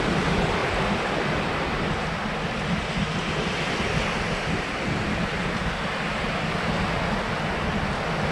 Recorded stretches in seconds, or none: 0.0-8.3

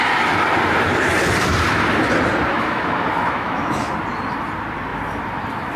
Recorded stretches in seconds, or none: 0.0-2.5; 3.9-5.8